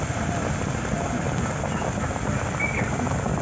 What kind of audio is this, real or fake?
real